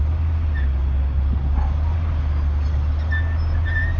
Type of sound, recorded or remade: recorded